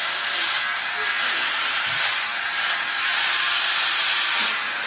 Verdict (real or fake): fake